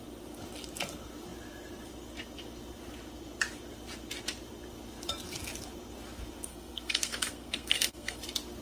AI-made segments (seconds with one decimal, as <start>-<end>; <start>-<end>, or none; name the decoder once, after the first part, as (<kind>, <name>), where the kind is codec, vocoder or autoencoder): 6.5-8.2 (codec, SNAC)